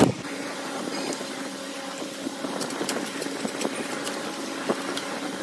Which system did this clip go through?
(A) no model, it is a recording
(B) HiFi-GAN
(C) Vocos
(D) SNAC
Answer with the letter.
A